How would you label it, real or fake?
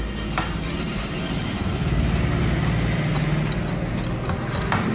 real